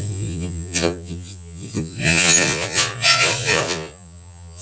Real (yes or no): no